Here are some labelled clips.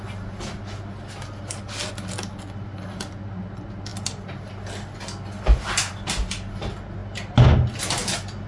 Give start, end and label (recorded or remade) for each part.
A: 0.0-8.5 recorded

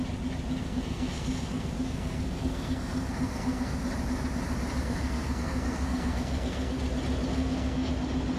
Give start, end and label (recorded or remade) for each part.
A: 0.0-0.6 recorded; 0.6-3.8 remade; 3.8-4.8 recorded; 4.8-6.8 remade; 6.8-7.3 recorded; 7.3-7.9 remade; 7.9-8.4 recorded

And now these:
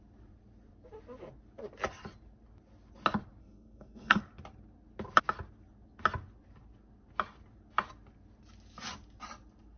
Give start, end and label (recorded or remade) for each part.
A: 0.0-3.4 recorded; 3.4-4.2 remade; 4.2-9.8 recorded

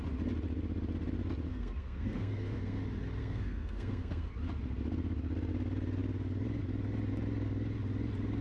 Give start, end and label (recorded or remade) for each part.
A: 0.0-1.5 recorded; 1.5-2.8 remade; 2.8-3.2 recorded; 3.2-4.3 remade; 4.3-8.4 recorded